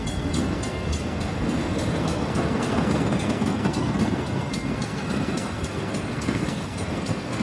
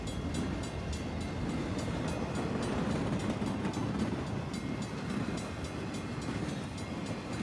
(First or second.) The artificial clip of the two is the first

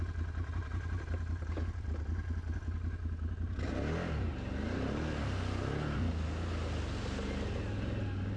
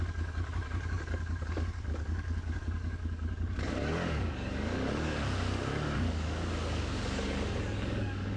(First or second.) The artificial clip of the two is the second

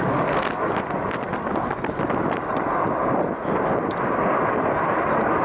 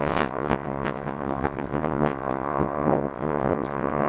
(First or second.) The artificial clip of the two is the second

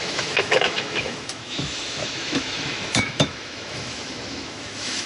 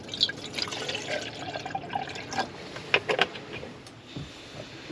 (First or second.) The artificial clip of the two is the first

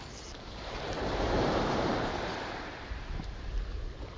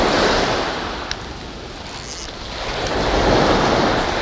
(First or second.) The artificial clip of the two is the first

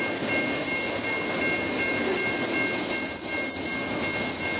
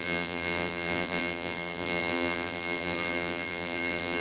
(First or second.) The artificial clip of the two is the second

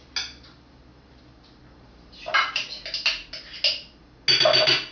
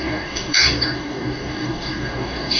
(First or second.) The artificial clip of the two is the second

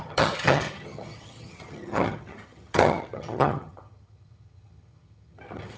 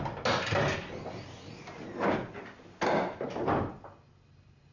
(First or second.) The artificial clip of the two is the first